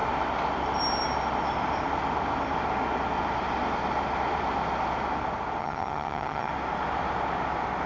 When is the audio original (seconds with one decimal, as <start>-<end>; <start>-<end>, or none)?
0.0-5.6; 6.5-7.9